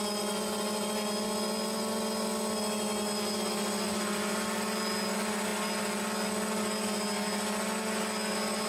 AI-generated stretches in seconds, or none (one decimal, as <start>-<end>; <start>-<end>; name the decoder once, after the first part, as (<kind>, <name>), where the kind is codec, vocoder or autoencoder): none